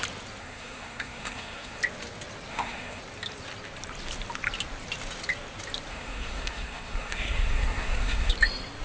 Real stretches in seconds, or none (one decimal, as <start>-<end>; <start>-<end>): 0.0-0.4; 1.8-2.5; 3.0-5.9; 8.3-8.8